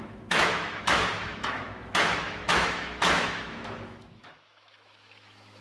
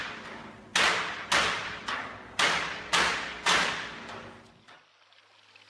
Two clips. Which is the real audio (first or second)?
second